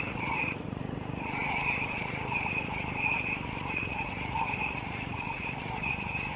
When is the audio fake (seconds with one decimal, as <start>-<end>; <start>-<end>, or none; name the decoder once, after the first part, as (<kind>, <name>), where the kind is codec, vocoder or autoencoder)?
0.0-6.4 (vocoder, Vocos)